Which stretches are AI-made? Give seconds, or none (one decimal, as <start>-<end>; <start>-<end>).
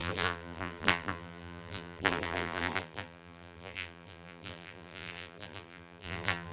0.0-6.5